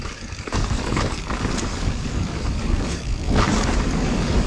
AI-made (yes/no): yes